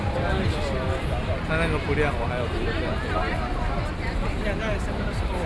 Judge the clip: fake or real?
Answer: real